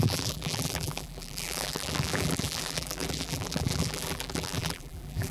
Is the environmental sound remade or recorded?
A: remade